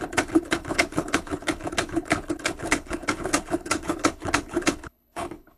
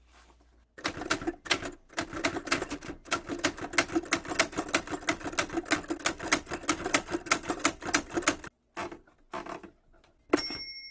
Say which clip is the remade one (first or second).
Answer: first